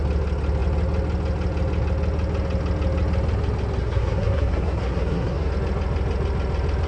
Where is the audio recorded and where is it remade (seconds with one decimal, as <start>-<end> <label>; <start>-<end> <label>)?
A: 0.0-3.8 recorded; 3.8-5.5 remade; 5.5-6.9 recorded